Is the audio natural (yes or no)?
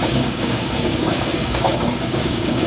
no